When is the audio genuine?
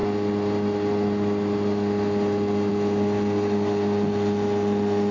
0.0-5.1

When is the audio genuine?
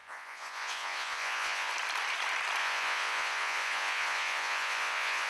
1.7-2.6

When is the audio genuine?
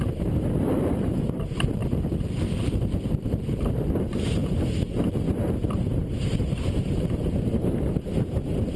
1.8-3.1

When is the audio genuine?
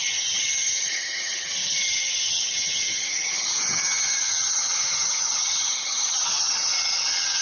none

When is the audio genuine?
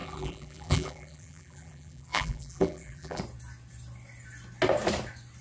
3.2-5.4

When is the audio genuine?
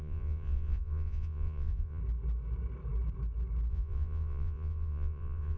2.0-3.7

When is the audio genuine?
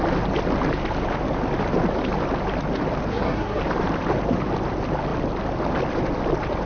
0.0-3.1; 3.6-6.7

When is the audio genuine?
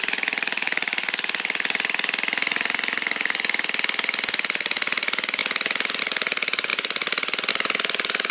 0.0-8.3